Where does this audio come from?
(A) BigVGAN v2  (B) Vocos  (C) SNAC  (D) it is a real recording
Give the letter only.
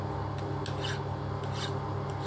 D